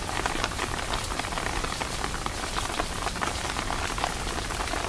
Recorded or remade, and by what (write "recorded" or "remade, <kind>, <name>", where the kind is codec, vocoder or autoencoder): recorded